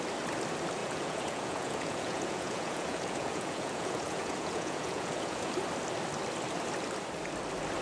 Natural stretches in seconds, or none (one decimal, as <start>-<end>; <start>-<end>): 0.0-0.8; 5.5-7.8